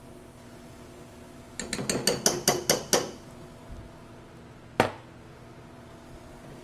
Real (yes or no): yes